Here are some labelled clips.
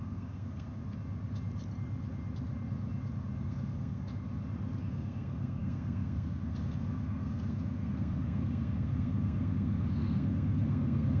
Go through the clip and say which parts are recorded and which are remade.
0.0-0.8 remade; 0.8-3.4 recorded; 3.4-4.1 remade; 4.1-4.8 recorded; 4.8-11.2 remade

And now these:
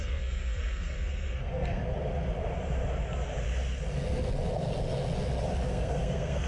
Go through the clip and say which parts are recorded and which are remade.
0.0-1.8 remade; 1.8-5.7 recorded; 5.7-6.5 remade

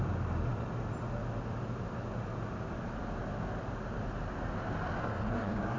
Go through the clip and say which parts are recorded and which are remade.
0.0-5.0 recorded; 5.0-5.8 remade

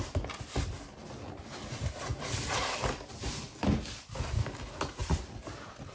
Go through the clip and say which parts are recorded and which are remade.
0.0-5.9 recorded

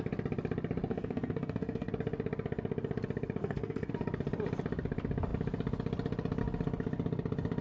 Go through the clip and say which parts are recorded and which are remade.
0.0-0.9 recorded; 0.9-1.9 remade; 1.9-3.4 recorded; 3.4-3.9 remade; 3.9-7.6 recorded

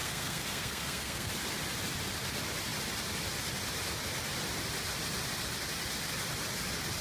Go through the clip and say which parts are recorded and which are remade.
0.0-1.3 remade; 1.3-7.0 recorded

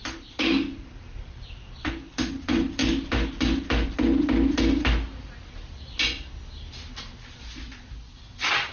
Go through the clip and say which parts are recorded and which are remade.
0.0-8.7 recorded